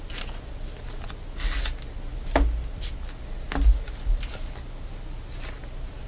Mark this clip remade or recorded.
recorded